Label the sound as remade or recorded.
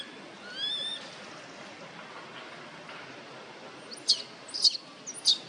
recorded